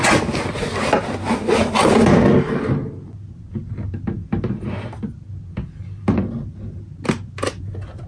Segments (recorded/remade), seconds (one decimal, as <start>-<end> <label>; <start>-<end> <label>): 0.0-8.1 recorded